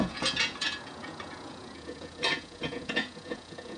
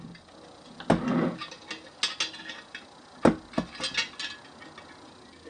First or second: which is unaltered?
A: second